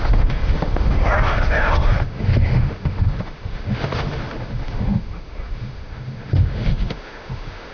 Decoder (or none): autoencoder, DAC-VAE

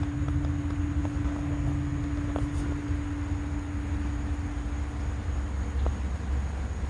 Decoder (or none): none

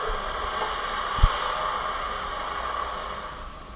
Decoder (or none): none